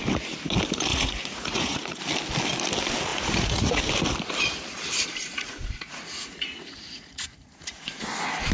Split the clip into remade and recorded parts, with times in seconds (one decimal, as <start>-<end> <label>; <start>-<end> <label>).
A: 0.0-0.9 recorded; 0.9-2.0 remade; 2.0-3.1 recorded; 3.1-3.8 remade; 3.8-5.3 recorded; 5.3-8.0 remade; 8.0-8.5 recorded